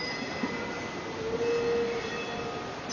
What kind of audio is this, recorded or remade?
recorded